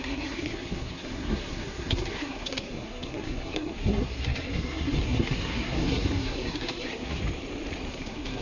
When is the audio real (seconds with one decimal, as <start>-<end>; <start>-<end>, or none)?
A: 7.2-7.9